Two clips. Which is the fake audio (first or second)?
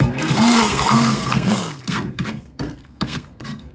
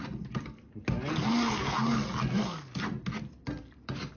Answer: first